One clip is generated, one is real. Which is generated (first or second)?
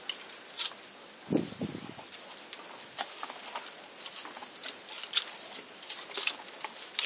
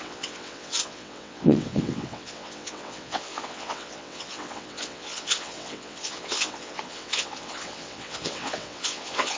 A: second